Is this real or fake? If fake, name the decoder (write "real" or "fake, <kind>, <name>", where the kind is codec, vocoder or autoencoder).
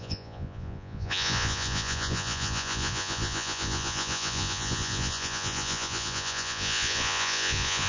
fake, vocoder, Vocos